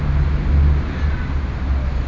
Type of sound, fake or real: real